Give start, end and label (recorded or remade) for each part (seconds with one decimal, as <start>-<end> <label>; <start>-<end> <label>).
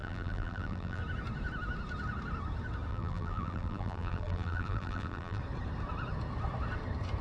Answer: 0.0-1.0 remade; 1.0-2.9 recorded; 2.9-5.4 remade; 5.4-7.2 recorded